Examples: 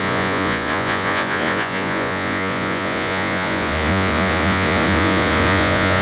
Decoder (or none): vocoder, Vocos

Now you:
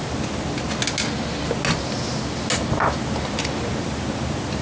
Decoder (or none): none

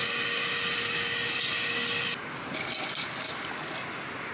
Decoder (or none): none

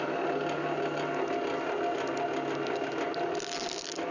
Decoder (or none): none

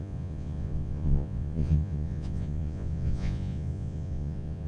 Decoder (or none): vocoder, Vocos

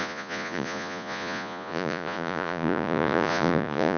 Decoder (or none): vocoder, Vocos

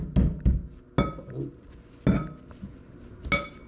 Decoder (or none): none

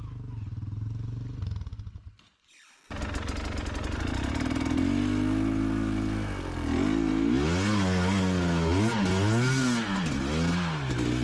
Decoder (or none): none